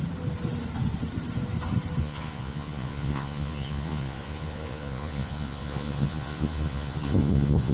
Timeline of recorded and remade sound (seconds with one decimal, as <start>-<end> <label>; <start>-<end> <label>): 0.0-2.0 recorded; 2.0-7.7 remade